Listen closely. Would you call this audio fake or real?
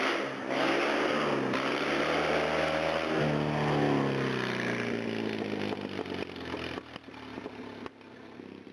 real